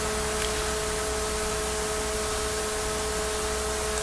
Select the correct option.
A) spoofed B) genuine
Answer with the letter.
B